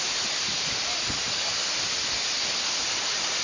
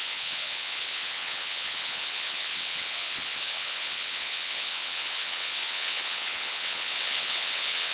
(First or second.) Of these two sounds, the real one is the first